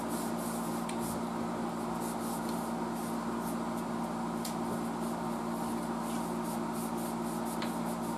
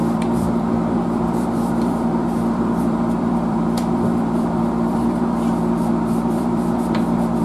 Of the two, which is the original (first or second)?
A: first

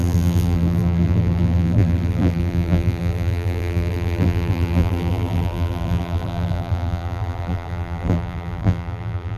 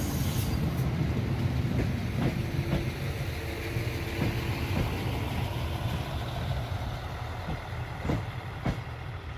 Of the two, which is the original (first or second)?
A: second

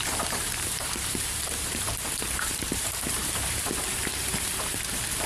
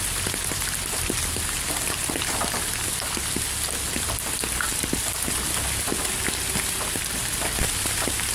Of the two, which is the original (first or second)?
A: second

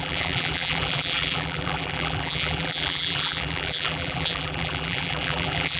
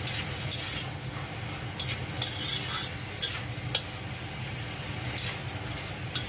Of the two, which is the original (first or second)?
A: second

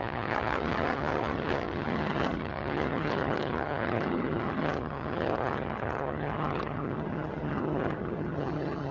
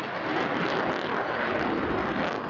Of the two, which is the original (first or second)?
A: second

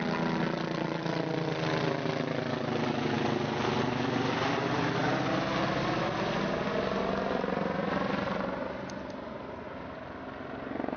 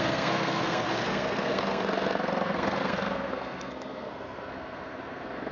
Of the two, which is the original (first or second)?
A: first